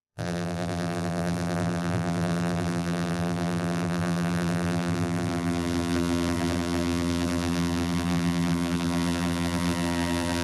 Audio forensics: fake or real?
fake